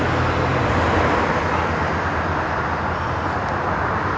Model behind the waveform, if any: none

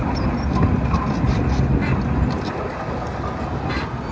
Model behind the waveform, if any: none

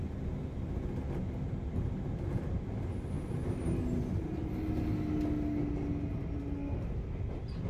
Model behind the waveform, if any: none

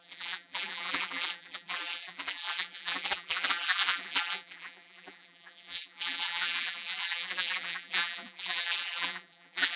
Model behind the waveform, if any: vocoder, BigVGAN v2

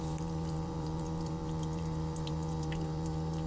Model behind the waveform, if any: vocoder, BigVGAN v2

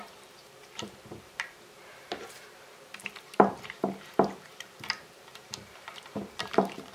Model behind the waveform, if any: vocoder, BigVGAN v2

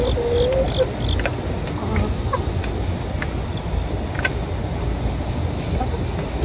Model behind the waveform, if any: none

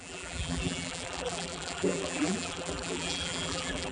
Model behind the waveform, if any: vocoder, BigVGAN v2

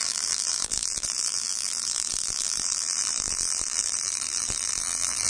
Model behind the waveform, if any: vocoder, BigVGAN v2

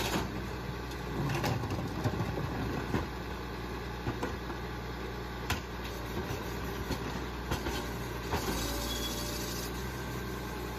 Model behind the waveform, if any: none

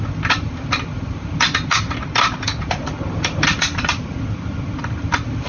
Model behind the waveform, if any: none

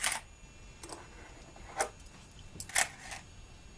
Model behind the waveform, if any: none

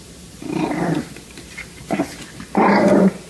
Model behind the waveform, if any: vocoder, BigVGAN v2